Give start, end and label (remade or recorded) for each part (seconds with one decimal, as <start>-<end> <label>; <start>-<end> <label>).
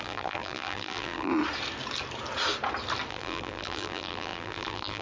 0.0-1.3 remade; 1.3-3.1 recorded; 3.1-5.0 remade